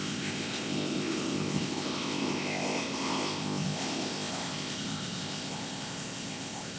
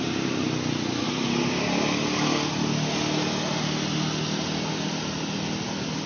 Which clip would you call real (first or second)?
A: second